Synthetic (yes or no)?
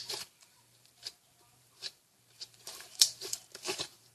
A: yes